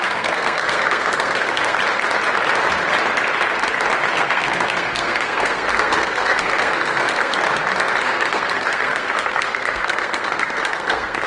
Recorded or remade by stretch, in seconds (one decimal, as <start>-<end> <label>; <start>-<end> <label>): 0.0-1.8 remade; 1.8-4.1 recorded; 4.1-7.3 remade; 7.3-8.0 recorded; 8.0-11.3 remade